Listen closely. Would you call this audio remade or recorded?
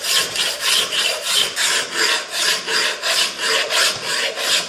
remade